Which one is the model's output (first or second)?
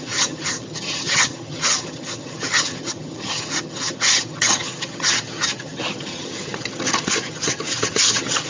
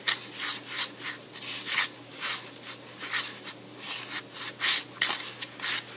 first